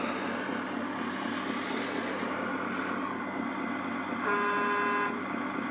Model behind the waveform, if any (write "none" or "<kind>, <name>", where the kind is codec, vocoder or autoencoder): none